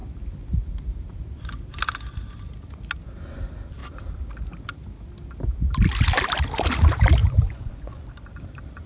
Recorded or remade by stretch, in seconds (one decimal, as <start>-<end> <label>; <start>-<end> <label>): 0.0-7.2 recorded; 7.2-8.1 remade; 8.1-8.9 recorded